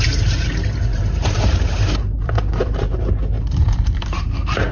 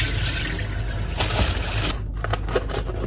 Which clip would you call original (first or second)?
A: second